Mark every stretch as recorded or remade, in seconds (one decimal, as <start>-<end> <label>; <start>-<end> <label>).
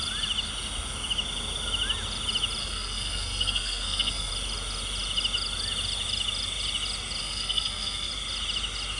0.0-2.6 recorded; 2.6-4.3 remade; 4.3-7.2 recorded; 7.2-8.1 remade; 8.1-9.0 recorded